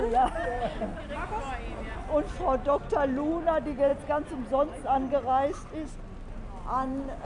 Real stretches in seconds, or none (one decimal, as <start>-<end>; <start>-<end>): 0.0-7.3